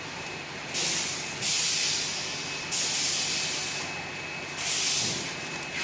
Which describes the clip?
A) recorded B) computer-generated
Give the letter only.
A